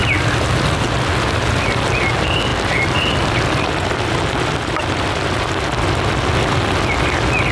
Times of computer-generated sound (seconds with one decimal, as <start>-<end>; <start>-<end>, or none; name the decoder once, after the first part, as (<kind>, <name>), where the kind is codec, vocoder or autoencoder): none

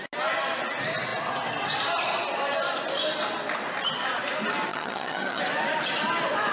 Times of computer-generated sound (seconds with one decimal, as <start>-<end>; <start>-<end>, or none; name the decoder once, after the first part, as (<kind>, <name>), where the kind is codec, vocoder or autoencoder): 4.7-5.4 (vocoder, HiFi-GAN)

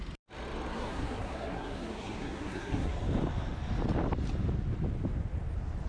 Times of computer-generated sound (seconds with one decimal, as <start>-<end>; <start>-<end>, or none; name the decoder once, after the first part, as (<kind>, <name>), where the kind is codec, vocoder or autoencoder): 0.7-2.9 (codec, SNAC)

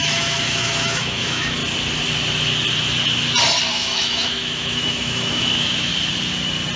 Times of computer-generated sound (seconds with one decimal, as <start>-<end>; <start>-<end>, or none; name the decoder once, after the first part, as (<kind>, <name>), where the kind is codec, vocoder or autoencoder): 0.0-1.6 (autoencoder, DAC-VAE); 3.7-5.9

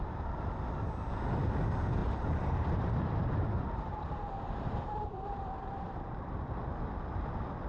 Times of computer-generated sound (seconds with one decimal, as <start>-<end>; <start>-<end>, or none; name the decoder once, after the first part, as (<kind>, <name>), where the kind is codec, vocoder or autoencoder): 2.0-6.3 (vocoder, BigVGAN v2)

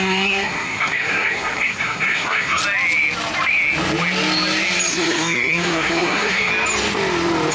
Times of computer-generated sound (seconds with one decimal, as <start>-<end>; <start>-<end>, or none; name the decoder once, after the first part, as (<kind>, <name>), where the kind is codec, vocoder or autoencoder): 0.0-2.6 (codec, SNAC); 4.9-6.5